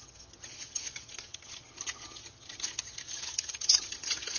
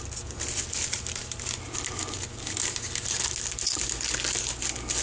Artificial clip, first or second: first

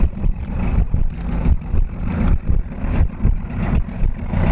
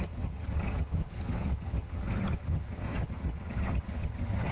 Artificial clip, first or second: second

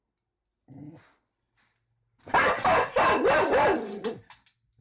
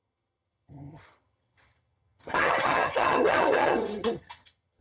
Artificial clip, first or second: second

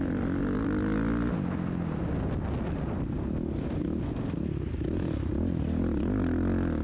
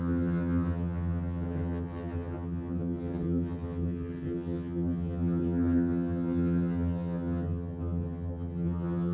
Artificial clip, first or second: second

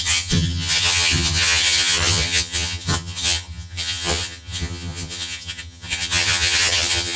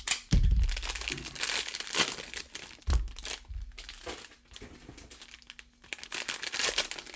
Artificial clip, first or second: first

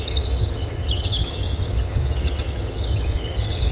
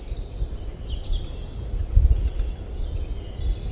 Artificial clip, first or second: first